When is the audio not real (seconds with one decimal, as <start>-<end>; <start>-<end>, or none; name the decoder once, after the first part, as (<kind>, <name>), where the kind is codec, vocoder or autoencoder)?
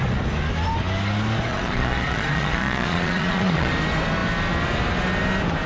1.5-3.7 (vocoder, Vocos)